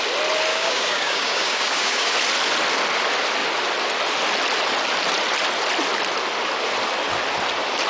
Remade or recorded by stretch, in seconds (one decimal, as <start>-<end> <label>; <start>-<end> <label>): 0.0-0.5 recorded; 0.5-2.1 remade; 2.1-7.9 recorded